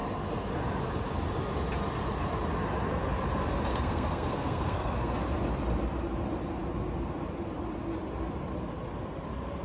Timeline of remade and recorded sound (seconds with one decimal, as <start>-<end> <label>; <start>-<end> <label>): 0.0-3.7 recorded; 3.7-5.2 remade; 5.2-9.6 recorded